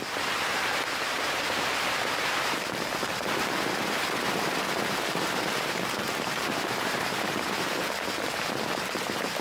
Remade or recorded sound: recorded